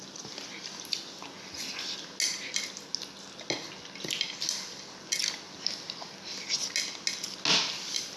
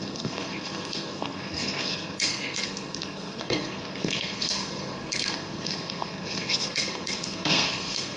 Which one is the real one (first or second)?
first